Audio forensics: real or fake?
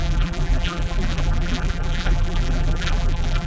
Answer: fake